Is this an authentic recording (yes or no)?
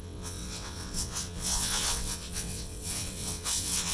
no